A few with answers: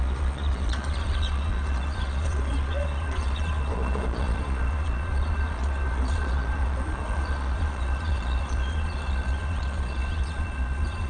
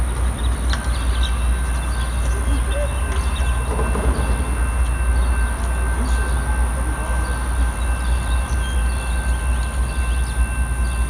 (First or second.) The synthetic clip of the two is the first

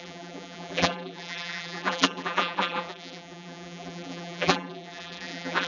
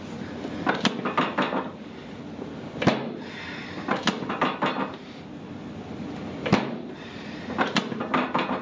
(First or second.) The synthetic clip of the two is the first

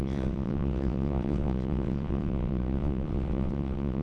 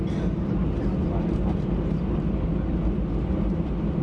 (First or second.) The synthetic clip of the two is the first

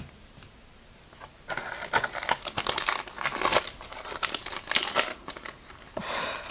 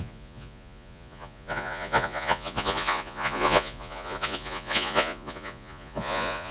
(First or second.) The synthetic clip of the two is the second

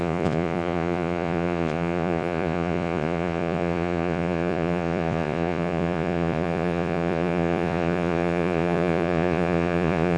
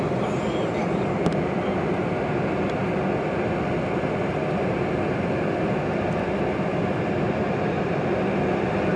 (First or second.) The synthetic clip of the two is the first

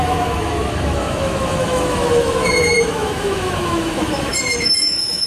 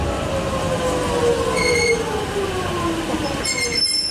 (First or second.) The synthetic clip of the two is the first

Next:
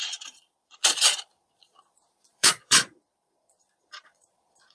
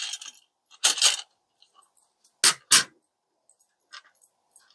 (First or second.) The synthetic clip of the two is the first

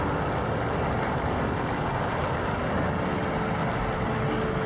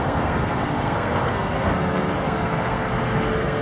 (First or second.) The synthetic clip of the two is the second